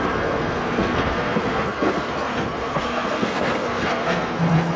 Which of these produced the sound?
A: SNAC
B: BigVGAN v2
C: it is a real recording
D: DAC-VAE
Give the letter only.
A